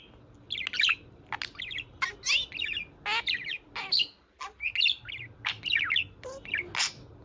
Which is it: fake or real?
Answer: real